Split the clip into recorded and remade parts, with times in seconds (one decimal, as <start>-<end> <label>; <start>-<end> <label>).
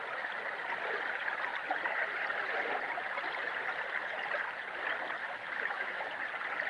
0.0-5.2 recorded; 5.2-6.1 remade; 6.1-6.7 recorded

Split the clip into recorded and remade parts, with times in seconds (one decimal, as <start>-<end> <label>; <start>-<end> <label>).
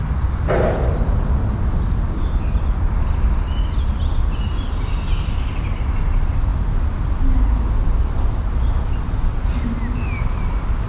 0.0-10.9 recorded